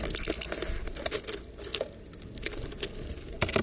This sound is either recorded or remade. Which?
recorded